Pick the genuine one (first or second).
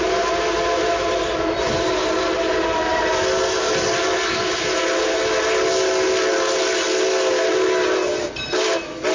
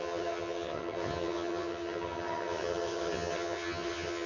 first